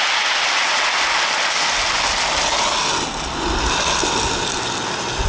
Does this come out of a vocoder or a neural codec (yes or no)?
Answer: no